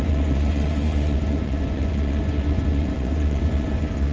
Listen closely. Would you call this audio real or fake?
fake